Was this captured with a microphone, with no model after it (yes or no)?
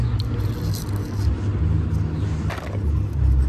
yes